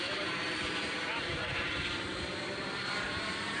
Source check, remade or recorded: remade